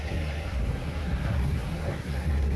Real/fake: fake